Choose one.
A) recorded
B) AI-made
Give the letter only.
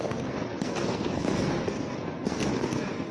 B